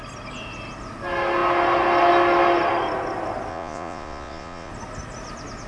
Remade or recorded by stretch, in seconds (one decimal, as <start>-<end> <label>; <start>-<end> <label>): 0.0-3.5 recorded; 3.5-4.7 remade; 4.7-5.7 recorded